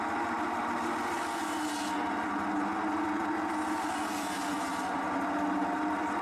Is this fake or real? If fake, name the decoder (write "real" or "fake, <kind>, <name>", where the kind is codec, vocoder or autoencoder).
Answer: real